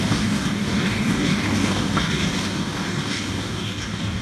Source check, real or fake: fake